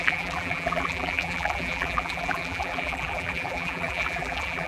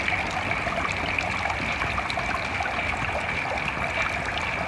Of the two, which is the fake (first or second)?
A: first